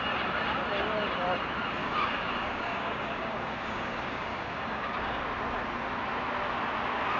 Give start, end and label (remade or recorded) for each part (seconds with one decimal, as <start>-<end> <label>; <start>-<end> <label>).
0.0-1.8 recorded; 1.8-5.2 remade; 5.2-7.2 recorded